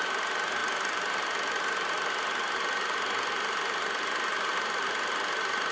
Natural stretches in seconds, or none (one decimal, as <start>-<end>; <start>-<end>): 0.0-5.7